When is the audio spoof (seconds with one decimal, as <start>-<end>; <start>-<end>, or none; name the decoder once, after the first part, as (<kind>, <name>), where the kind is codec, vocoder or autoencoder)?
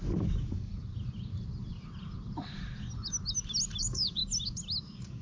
0.0-0.7 (codec, DAC); 3.8-4.2; 4.8-5.2